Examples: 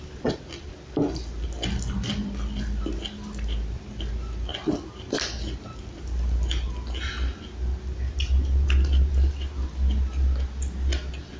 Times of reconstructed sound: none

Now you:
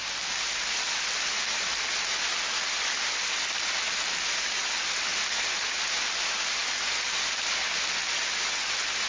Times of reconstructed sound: none

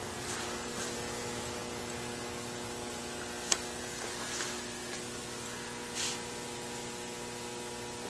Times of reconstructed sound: none

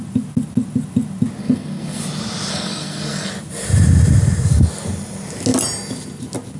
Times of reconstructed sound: 1.4-2.0 (codec, SNAC); 2.5-3.3

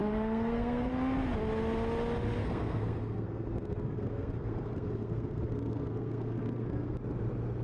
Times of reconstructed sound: 0.0-0.9 (codec, SNAC); 2.4-7.0

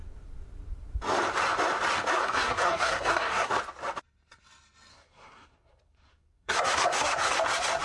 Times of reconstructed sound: 2.2-3.5 (codec, SNAC); 4.9-7.3

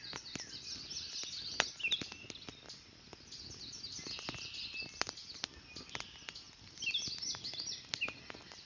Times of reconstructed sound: none

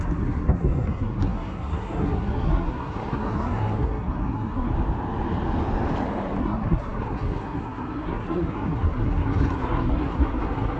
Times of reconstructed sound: 0.0-4.7 (codec, SNAC); 6.4-10.8